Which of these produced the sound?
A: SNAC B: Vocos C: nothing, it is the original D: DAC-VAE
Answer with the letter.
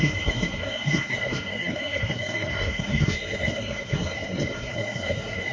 A